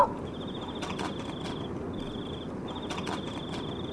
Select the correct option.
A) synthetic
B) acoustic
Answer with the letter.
B